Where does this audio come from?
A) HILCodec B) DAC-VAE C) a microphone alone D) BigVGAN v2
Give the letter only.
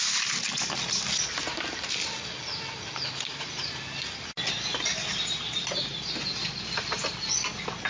C